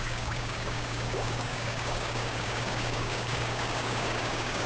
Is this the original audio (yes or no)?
no